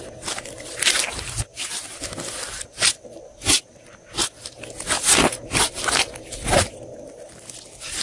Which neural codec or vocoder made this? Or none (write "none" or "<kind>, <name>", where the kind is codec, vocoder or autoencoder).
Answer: none